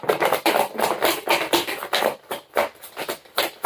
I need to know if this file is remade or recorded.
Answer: recorded